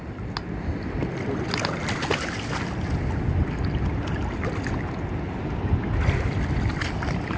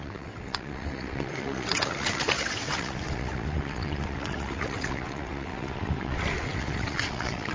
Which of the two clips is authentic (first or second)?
first